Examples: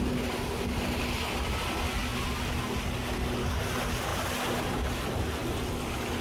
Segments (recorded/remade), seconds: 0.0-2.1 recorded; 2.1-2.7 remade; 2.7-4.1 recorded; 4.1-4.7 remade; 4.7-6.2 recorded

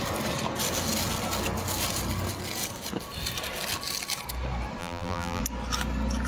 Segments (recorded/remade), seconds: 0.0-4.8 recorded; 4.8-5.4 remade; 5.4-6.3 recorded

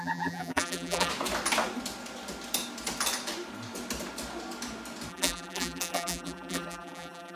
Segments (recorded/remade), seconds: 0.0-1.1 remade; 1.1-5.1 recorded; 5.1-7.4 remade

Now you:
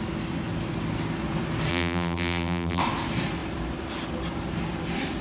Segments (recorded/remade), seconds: 0.0-1.7 recorded; 1.7-2.8 remade; 2.8-5.2 recorded

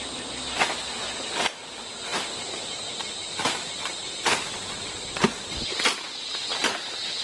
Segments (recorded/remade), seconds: 0.0-7.2 recorded

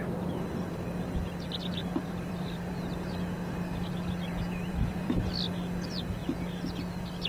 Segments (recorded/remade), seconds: 0.0-1.8 recorded; 1.8-2.7 remade; 2.7-4.7 recorded; 4.7-5.3 remade; 5.3-7.3 recorded

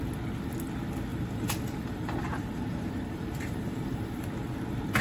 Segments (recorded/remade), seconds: 0.0-1.1 recorded; 1.1-4.1 remade; 4.1-5.0 recorded